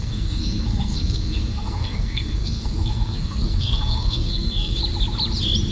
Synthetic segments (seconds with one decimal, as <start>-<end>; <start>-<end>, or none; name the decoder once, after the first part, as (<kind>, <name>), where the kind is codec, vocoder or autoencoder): 0.0-4.8 (codec, SNAC)